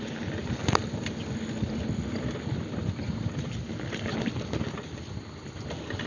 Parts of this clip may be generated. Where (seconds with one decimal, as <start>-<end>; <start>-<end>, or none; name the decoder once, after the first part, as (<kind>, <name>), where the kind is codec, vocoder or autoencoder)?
0.0-6.1 (vocoder, BigVGAN v2)